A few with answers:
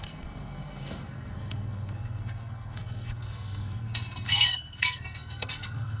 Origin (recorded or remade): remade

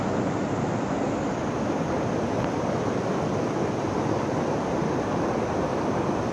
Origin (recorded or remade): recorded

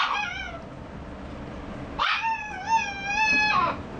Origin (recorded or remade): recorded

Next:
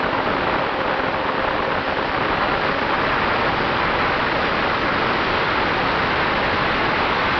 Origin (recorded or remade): recorded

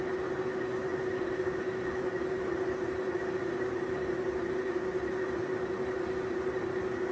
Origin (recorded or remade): recorded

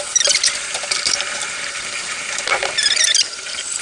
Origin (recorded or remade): remade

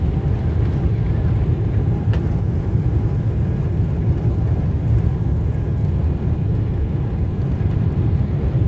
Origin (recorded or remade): remade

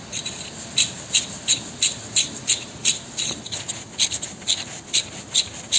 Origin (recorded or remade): recorded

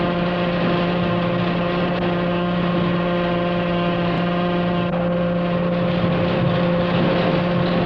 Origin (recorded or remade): recorded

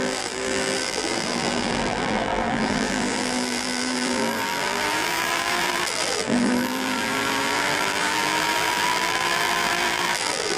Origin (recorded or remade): remade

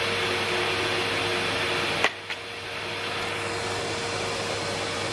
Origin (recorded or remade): recorded